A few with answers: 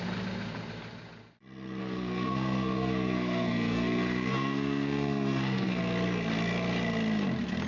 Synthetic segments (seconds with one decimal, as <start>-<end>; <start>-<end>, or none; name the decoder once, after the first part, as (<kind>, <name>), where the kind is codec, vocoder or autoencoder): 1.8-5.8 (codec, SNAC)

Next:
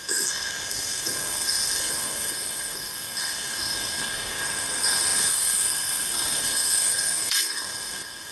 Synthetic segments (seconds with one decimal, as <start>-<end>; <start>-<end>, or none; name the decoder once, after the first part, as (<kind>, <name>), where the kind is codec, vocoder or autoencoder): 0.0-8.3 (codec, SNAC)

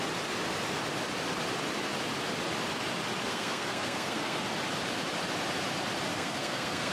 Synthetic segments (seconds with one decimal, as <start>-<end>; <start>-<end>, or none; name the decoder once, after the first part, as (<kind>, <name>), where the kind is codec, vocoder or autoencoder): 3.3-4.4 (codec, SNAC); 6.1-6.9

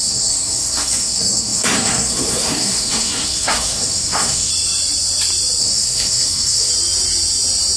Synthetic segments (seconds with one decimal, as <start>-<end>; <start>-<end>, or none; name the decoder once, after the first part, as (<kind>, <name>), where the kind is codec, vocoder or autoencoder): 0.0-4.5 (codec, SNAC); 5.6-6.7

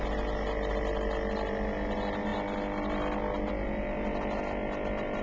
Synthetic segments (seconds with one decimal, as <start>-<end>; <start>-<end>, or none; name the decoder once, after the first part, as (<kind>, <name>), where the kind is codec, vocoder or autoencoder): none